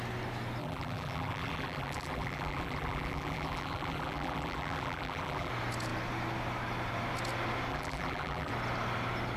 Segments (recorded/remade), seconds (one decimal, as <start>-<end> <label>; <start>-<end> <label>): 0.0-0.6 recorded; 0.6-5.5 remade; 5.5-7.7 recorded; 7.7-8.5 remade; 8.5-9.4 recorded